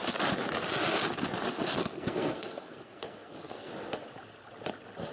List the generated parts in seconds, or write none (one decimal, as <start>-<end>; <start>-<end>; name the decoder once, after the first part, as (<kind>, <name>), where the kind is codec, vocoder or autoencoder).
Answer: 1.6-3.7 (codec, SNAC)